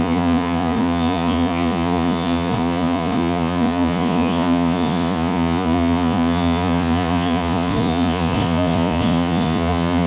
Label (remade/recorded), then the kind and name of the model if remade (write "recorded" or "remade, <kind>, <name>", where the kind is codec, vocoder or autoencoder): remade, vocoder, Vocos